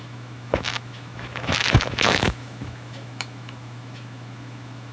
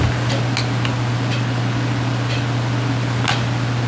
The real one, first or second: second